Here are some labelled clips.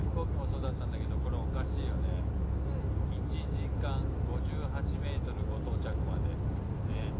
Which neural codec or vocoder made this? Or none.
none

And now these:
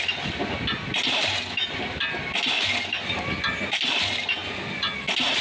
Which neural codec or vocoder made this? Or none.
none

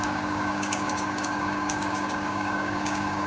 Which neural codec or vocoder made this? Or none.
codec, DAC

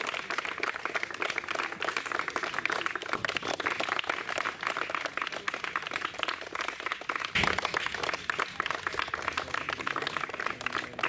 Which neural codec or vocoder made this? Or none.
none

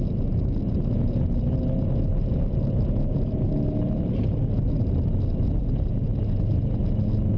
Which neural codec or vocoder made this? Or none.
none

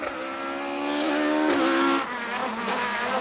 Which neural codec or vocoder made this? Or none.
none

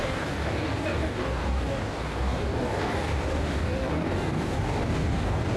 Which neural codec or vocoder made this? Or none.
codec, DAC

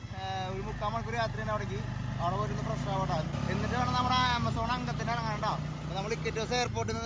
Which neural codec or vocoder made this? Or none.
none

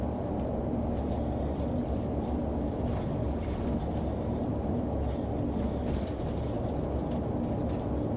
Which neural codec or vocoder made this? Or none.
none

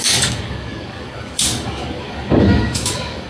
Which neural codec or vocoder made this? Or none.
codec, DAC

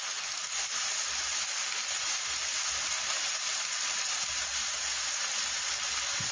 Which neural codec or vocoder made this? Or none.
none